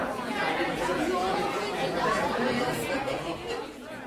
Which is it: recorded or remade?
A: remade